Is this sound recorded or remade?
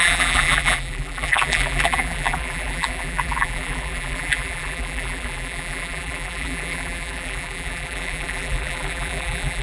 remade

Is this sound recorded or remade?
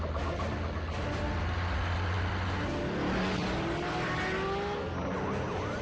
recorded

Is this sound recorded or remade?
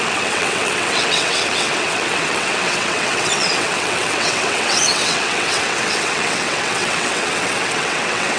remade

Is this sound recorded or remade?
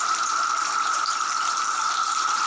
recorded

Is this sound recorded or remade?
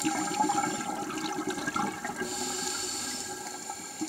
recorded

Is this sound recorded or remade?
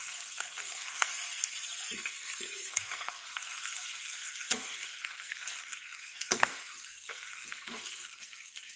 remade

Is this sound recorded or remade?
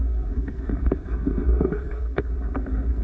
remade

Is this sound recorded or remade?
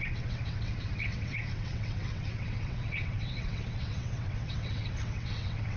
remade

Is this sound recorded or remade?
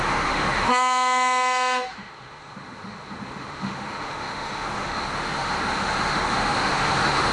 remade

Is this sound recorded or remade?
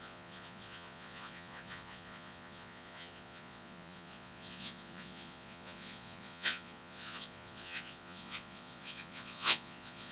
remade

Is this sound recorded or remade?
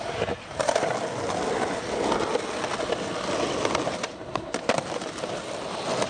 recorded